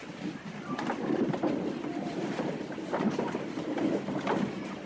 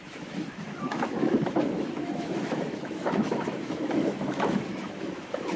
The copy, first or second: second